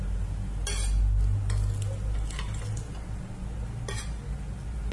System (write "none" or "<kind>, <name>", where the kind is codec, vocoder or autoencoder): none